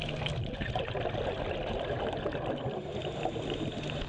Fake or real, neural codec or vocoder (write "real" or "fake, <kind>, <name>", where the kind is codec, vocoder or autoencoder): real